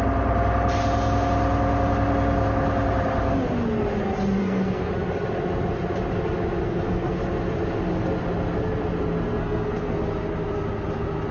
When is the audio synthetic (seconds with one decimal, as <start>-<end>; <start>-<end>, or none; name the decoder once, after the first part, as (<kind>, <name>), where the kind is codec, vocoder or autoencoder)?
4.4-4.9 (codec, SNAC); 6.6-7.2; 9.4-10.0